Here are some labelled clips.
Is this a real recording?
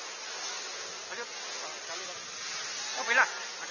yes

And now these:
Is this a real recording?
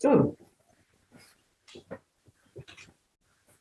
yes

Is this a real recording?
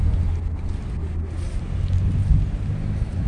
yes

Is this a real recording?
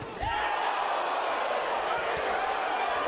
yes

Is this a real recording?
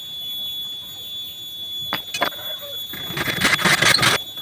yes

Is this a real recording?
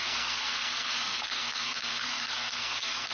no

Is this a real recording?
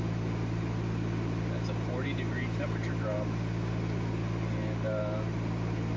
yes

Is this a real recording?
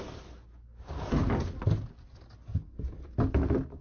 yes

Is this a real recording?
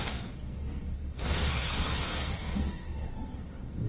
no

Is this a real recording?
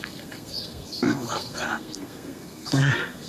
no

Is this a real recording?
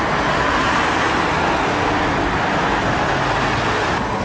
yes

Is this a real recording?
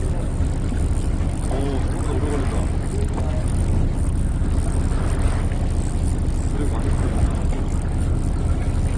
yes